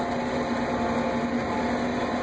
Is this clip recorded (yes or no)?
yes